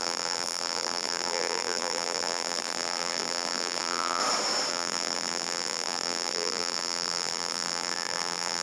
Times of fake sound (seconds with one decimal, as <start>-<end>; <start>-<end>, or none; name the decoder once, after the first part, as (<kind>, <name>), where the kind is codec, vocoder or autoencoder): 0.0-4.2 (vocoder, BigVGAN v2); 4.7-8.6